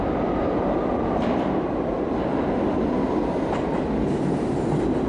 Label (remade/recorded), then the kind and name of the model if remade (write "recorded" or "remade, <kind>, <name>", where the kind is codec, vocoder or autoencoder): recorded